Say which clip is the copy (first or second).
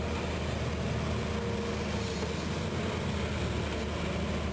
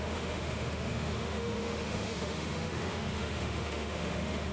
second